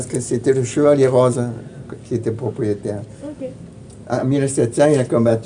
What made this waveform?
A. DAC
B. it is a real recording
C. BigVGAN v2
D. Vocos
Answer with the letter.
B